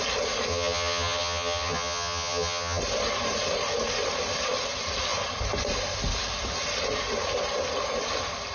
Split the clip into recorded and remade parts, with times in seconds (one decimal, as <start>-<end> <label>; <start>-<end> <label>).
0.0-0.5 recorded; 0.5-2.8 remade; 2.8-8.5 recorded